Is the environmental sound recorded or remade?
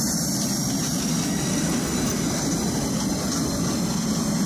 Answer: recorded